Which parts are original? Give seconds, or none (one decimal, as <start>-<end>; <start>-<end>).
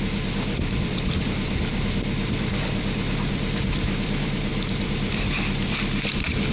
none